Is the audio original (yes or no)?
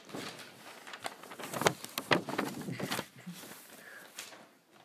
yes